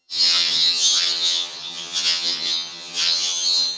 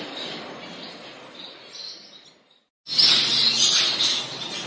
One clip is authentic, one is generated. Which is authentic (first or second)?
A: second